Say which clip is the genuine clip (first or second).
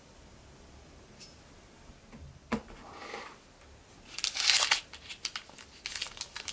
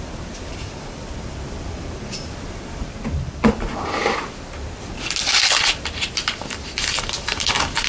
first